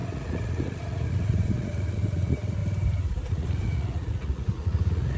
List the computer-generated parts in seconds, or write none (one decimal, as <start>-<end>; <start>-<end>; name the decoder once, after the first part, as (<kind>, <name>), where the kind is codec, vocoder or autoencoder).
0.0-2.6 (vocoder, Vocos); 3.3-5.2